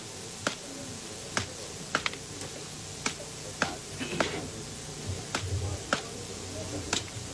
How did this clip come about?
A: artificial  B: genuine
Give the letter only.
B